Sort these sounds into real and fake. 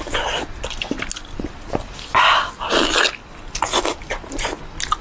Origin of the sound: real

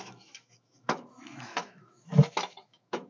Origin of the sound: fake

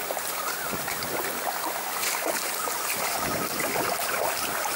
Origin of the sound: real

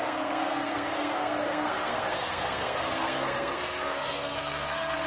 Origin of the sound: fake